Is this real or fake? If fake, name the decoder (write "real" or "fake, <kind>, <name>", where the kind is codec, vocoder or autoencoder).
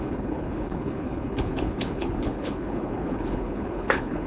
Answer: fake, codec, HILCodec